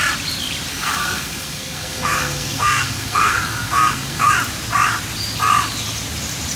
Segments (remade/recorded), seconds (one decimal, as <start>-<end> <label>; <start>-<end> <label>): 0.0-0.7 recorded; 0.7-4.3 remade; 4.3-6.6 recorded